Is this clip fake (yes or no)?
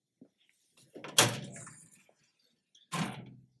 no